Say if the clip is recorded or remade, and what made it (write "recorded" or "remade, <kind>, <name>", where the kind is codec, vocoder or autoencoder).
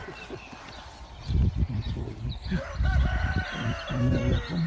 remade, vocoder, BigVGAN v2